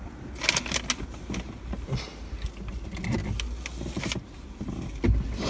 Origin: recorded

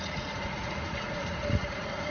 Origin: remade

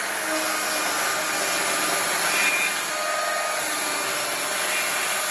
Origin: recorded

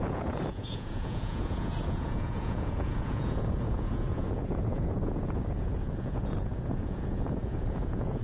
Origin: remade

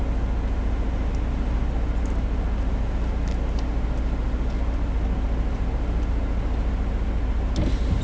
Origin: recorded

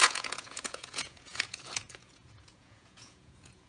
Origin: remade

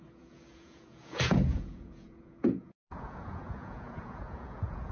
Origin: remade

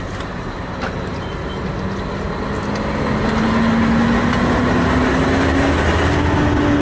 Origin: recorded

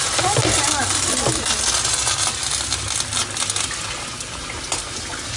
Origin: recorded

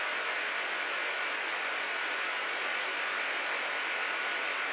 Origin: recorded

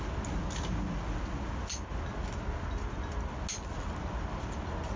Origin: recorded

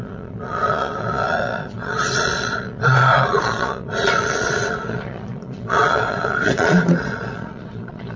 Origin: remade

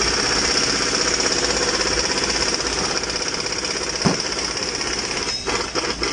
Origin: recorded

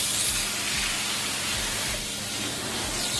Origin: recorded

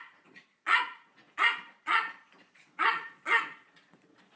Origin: remade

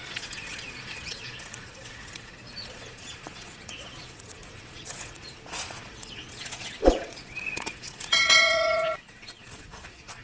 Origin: remade